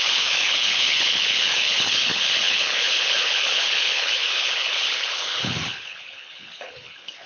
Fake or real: fake